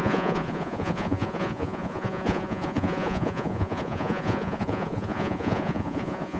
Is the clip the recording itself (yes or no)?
no